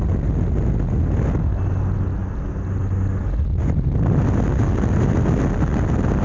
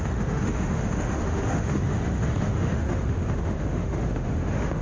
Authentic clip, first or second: first